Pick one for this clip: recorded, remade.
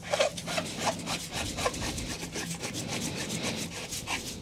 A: recorded